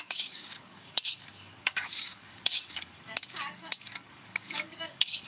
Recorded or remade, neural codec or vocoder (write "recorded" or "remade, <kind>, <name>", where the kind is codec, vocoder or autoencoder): remade, codec, DAC